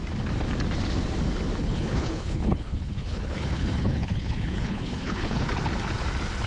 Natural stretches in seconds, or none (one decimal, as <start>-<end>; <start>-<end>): 0.0-1.6; 5.5-6.5